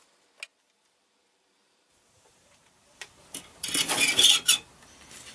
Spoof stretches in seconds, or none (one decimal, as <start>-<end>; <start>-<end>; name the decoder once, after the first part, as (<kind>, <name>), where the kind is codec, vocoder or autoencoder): 0.5-3.7 (vocoder, BigVGAN v2)